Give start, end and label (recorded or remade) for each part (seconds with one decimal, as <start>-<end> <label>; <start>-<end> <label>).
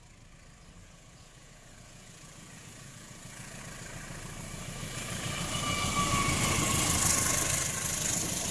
0.0-0.8 recorded; 0.8-3.6 remade; 3.6-8.5 recorded